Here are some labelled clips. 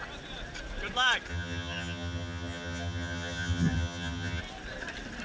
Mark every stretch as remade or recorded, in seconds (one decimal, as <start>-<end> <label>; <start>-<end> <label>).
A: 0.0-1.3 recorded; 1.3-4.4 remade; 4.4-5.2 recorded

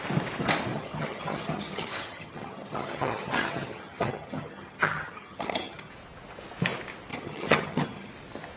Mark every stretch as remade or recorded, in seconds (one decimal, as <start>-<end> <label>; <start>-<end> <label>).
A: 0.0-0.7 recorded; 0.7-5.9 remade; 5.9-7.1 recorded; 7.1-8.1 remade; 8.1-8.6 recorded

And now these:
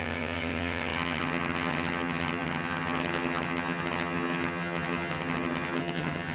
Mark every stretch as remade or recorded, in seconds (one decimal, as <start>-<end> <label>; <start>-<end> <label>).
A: 0.0-6.3 remade

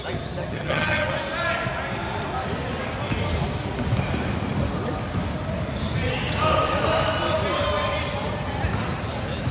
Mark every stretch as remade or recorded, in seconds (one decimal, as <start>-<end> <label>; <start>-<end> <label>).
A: 0.0-0.4 recorded; 0.4-1.1 remade; 1.1-9.5 recorded